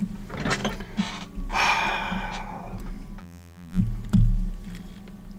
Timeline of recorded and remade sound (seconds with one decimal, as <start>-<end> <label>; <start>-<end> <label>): 0.0-3.2 recorded; 3.2-3.8 remade; 3.8-5.4 recorded